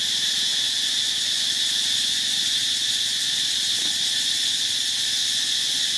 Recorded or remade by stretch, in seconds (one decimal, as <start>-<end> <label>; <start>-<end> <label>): 0.0-0.5 recorded; 0.5-3.2 remade; 3.2-5.2 recorded; 5.2-6.0 remade